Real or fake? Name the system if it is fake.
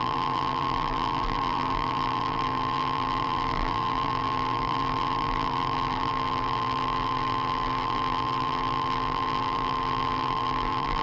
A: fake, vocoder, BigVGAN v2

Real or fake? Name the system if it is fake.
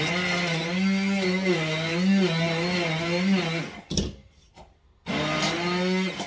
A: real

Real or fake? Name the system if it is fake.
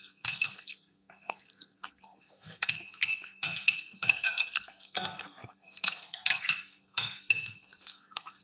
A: fake, codec, SNAC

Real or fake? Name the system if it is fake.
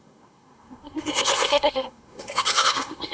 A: fake, codec, SNAC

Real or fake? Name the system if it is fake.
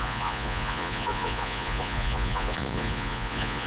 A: fake, vocoder, Vocos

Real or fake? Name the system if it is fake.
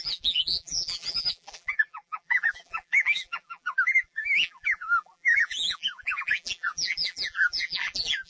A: fake, vocoder, BigVGAN v2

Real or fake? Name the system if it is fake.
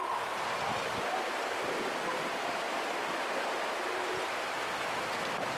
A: real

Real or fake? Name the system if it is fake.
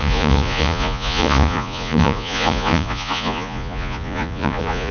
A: fake, vocoder, Vocos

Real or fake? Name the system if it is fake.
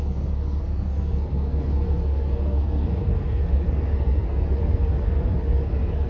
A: fake, codec, SNAC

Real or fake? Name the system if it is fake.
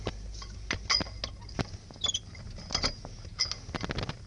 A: real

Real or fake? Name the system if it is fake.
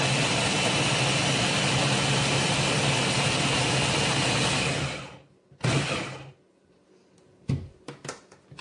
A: real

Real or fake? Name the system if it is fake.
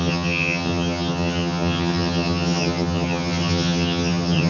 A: fake, vocoder, HiFi-GAN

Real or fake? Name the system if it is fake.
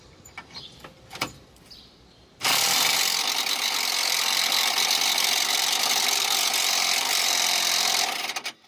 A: fake, vocoder, BigVGAN v2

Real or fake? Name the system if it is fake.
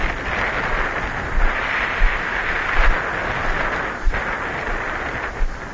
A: real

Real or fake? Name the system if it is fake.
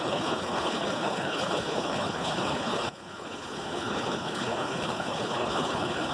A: fake, codec, HILCodec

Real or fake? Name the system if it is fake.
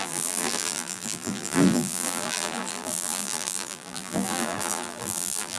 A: fake, vocoder, BigVGAN v2